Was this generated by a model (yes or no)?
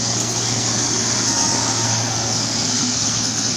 yes